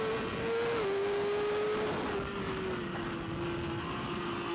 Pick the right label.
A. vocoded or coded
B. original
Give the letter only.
B